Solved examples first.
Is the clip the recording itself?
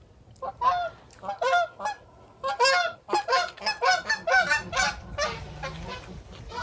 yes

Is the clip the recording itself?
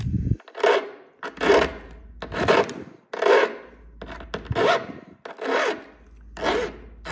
yes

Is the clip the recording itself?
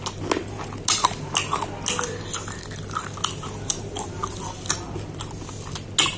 yes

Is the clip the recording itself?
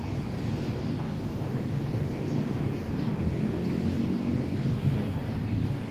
no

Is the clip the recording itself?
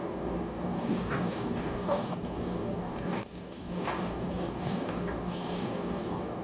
no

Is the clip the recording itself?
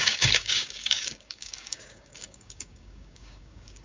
no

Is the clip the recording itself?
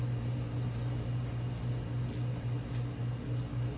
yes